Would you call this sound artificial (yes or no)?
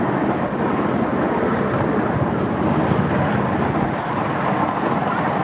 no